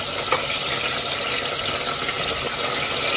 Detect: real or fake real